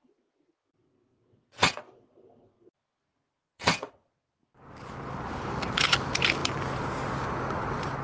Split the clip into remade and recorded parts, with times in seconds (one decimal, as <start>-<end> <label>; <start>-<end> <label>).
0.0-1.1 recorded; 1.1-1.9 remade; 1.9-3.4 recorded; 3.4-4.2 remade; 4.2-8.0 recorded